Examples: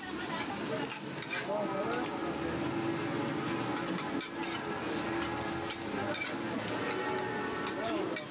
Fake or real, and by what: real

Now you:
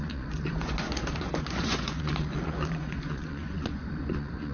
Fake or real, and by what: fake, vocoder, Vocos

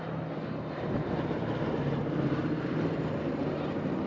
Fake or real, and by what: real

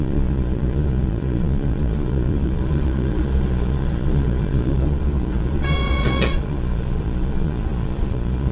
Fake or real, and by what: fake, vocoder, Vocos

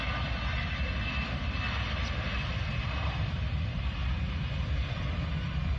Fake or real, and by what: real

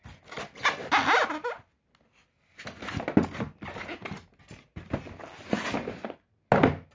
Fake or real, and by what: real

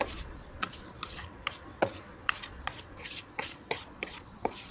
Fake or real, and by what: fake, vocoder, Vocos